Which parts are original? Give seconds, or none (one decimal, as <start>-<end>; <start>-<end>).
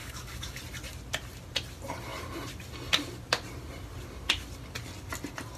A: 0.6-5.6